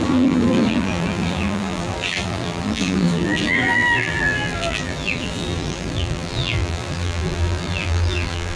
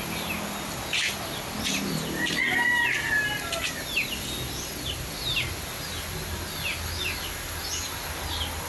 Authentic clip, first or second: second